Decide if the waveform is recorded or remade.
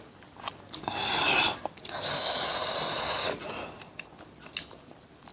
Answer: recorded